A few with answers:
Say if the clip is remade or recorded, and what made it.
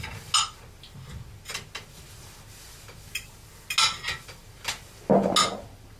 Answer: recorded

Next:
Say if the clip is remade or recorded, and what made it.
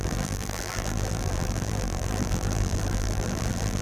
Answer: remade, vocoder, BigVGAN v2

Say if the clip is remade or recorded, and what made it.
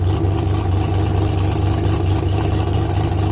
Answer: recorded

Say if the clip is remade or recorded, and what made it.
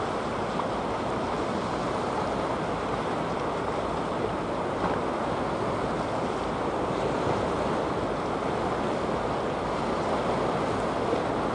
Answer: recorded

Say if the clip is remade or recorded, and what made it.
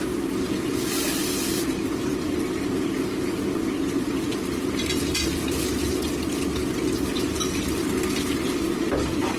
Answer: remade, vocoder, BigVGAN v2